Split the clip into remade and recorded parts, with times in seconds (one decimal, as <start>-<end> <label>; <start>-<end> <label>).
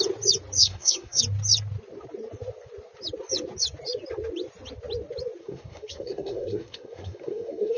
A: 0.0-0.6 recorded; 0.6-1.2 remade; 1.2-5.4 recorded; 5.4-7.8 remade